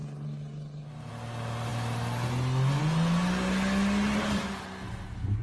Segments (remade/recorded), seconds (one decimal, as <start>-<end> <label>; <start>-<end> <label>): 0.0-5.4 recorded